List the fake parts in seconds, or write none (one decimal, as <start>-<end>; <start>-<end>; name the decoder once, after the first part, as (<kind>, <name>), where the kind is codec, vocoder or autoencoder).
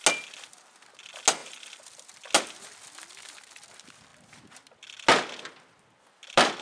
none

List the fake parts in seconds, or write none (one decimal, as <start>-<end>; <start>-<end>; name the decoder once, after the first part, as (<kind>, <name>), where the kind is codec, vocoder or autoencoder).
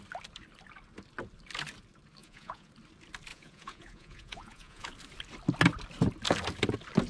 2.2-2.7 (vocoder, Vocos); 3.3-4.9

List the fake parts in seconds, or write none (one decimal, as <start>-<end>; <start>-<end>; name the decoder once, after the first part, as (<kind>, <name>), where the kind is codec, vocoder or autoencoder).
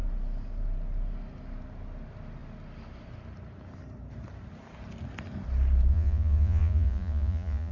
5.9-7.7 (vocoder, Vocos)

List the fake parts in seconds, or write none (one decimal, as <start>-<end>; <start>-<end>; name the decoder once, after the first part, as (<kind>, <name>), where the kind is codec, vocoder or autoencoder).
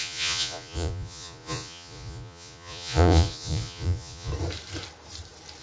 0.0-4.3 (vocoder, Vocos)